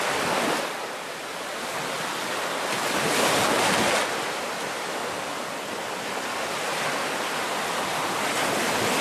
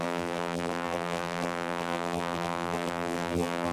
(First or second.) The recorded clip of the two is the first